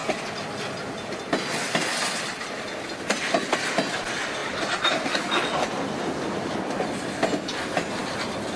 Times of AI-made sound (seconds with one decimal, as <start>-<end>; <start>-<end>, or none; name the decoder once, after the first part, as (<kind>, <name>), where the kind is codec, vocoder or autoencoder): none